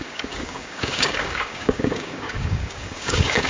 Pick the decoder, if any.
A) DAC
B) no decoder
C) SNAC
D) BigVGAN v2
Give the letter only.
A